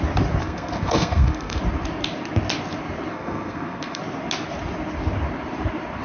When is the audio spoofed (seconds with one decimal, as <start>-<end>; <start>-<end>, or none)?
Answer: 0.4-1.6; 3.1-4.0